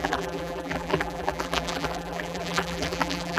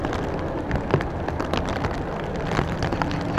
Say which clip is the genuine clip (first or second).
second